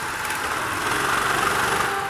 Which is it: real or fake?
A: real